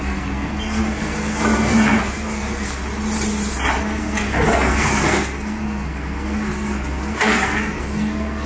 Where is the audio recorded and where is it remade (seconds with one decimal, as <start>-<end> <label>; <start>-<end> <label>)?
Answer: 0.0-2.8 remade; 2.8-3.8 recorded; 3.8-8.5 remade

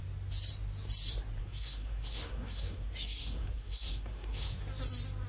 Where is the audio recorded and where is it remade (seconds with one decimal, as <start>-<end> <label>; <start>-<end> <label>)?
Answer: 0.0-1.4 recorded; 1.4-4.6 remade; 4.6-5.3 recorded

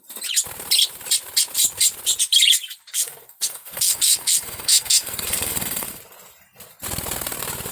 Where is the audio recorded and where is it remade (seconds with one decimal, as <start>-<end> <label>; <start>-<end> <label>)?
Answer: 0.0-2.9 recorded; 2.9-6.0 remade; 6.0-7.7 recorded

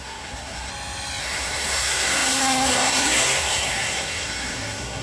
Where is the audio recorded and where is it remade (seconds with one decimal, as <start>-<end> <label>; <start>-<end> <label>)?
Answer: 0.0-0.7 remade; 0.7-1.2 recorded; 1.2-5.0 remade

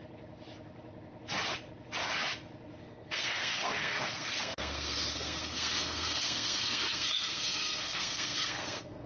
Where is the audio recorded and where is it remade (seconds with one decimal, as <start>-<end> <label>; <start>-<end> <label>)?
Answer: 0.0-2.8 recorded; 2.8-9.1 remade

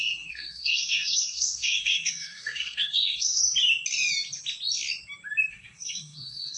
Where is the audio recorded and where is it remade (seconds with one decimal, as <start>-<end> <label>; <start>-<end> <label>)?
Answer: 0.0-3.4 remade; 3.4-5.5 recorded; 5.5-6.6 remade

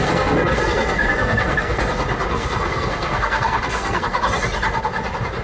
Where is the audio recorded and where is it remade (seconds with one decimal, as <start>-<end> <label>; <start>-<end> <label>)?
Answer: 0.0-1.8 remade; 1.8-2.3 recorded; 2.3-4.2 remade; 4.2-5.4 recorded